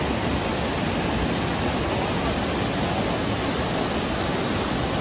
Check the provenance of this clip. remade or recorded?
recorded